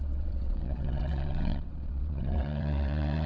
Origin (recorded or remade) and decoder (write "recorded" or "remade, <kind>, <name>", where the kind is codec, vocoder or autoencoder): remade, vocoder, WaveNeXt